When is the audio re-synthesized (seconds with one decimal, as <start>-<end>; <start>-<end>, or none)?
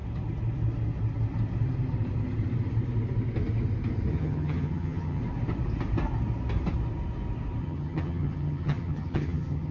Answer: 4.1-5.2; 7.6-9.7